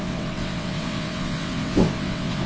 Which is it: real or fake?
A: fake